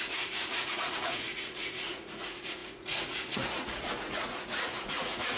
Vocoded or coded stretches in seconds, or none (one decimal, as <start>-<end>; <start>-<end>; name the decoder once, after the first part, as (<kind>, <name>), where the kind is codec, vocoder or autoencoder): 0.0-5.4 (vocoder, Vocos)